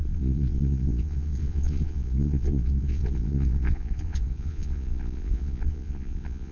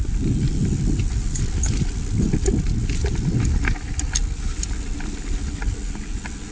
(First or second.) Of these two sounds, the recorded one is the second